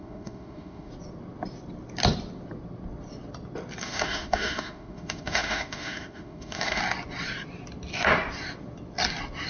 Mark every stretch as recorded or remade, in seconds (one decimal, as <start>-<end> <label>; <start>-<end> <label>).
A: 0.0-0.9 remade; 0.9-3.8 recorded; 3.8-6.8 remade; 6.8-9.5 recorded